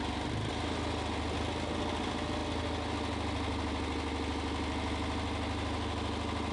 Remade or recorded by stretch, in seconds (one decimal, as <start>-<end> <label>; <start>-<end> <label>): 0.0-6.5 recorded